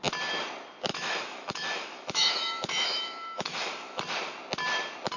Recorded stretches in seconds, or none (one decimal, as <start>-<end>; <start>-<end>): 0.0-0.9; 4.0-5.2